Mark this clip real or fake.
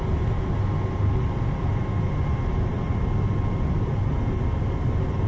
real